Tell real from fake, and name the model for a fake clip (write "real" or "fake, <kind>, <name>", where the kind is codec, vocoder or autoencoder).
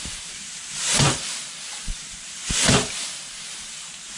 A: fake, vocoder, BigVGAN v2